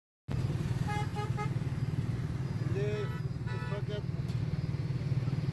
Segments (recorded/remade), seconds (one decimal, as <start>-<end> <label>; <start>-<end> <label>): 0.0-5.5 recorded